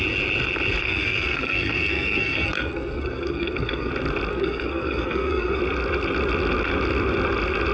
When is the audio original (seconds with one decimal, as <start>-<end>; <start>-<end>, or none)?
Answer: 0.0-0.8; 3.9-4.3; 5.6-7.7